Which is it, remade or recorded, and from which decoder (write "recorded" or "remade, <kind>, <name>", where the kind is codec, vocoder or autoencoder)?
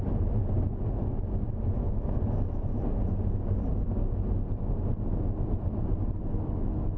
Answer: recorded